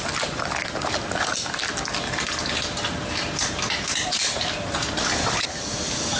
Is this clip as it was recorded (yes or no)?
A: yes